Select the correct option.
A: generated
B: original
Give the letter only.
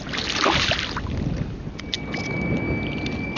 B